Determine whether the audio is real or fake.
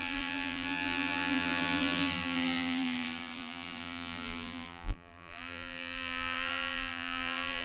fake